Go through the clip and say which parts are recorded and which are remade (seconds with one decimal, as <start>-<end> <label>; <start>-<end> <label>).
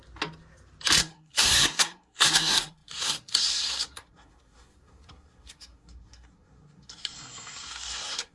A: 0.0-1.0 recorded; 1.0-8.3 remade